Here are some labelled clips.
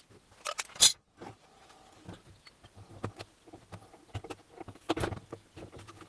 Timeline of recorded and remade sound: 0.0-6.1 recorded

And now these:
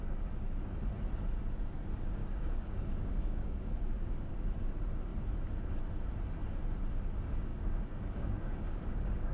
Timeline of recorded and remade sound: 0.0-2.2 recorded; 2.2-4.3 remade; 4.3-7.5 recorded; 7.5-9.3 remade

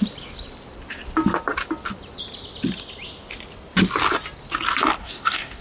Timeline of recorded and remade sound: 0.0-5.0 recorded; 5.0-5.6 remade

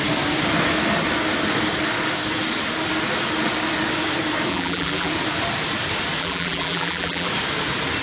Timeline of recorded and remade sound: 0.0-4.5 recorded; 4.5-5.1 remade; 5.1-6.2 recorded; 6.2-7.3 remade; 7.3-8.0 recorded

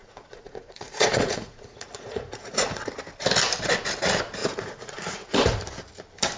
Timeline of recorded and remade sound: 0.0-3.0 remade; 3.0-4.4 recorded; 4.4-5.6 remade; 5.6-6.4 recorded

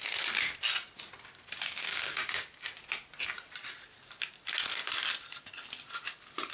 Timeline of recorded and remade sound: 0.0-1.9 recorded; 1.9-2.6 remade; 2.6-6.5 recorded